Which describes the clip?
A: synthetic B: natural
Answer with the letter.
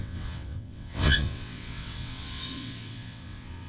A